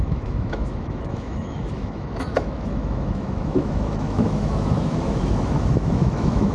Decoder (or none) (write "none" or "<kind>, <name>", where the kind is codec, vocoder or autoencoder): autoencoder, DAC-VAE